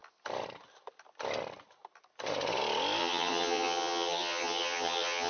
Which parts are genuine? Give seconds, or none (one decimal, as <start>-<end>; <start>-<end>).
0.0-3.0